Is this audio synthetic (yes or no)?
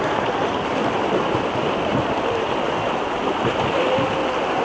no